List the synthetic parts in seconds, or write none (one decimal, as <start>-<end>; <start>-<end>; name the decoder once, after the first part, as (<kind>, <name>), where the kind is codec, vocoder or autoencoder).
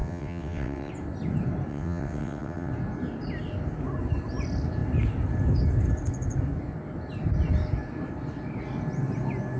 0.0-0.9 (vocoder, WaveNeXt); 1.7-2.7